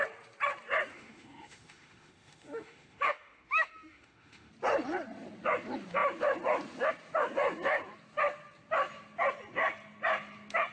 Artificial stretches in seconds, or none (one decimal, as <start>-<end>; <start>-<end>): 0.9-4.5